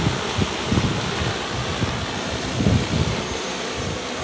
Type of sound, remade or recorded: recorded